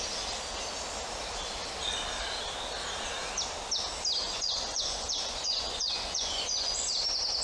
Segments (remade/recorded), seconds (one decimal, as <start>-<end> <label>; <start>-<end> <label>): 0.0-4.2 recorded; 4.2-6.9 remade; 6.9-7.4 recorded